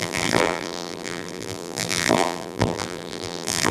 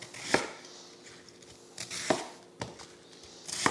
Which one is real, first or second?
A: second